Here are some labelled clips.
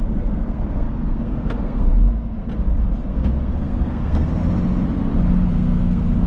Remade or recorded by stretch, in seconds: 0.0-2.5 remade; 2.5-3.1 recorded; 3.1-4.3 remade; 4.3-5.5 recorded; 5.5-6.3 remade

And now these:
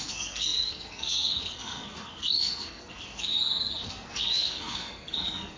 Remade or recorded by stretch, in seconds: 0.0-5.6 remade

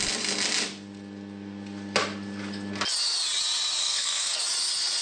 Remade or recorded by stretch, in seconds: 0.0-3.8 recorded; 3.8-4.4 remade; 4.4-5.0 recorded

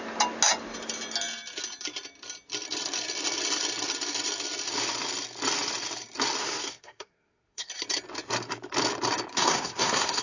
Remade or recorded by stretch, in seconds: 0.0-6.4 recorded; 6.4-7.7 remade; 7.7-9.3 recorded; 9.3-10.2 remade

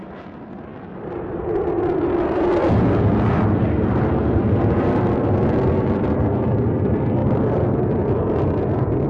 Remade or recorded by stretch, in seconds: 0.0-9.1 recorded

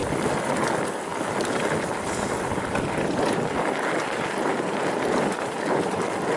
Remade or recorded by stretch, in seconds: 0.0-6.4 recorded

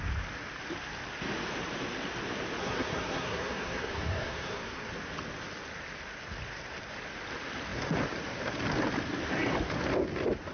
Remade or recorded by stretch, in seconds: 0.0-2.6 recorded; 2.6-4.9 remade; 4.9-10.5 recorded

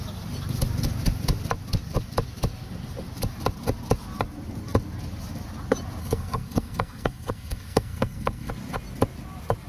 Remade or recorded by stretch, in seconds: 0.0-6.0 recorded; 6.0-8.5 remade; 8.5-9.7 recorded